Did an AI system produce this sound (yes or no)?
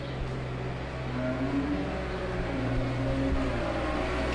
no